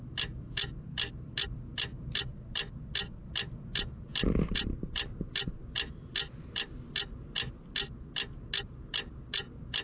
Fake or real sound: real